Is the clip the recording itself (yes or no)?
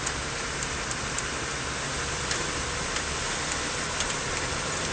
yes